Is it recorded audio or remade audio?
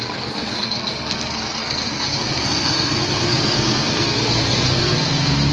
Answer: remade